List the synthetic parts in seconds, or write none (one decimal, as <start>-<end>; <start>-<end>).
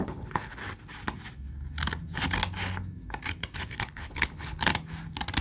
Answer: 0.0-0.6; 3.7-4.7